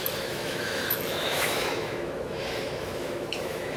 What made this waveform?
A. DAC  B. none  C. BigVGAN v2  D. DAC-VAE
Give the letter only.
D